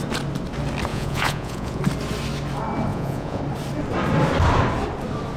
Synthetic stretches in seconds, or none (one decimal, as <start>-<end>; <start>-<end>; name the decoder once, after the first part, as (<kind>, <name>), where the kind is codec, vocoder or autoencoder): 0.9-1.8 (vocoder, Vocos); 2.9-3.4